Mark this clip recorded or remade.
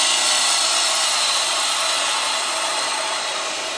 recorded